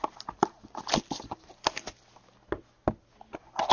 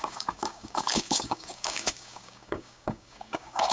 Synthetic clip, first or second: second